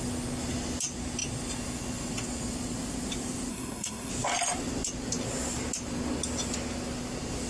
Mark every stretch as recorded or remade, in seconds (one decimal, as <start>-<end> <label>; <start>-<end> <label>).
0.0-3.5 recorded; 3.5-4.1 remade; 4.1-7.5 recorded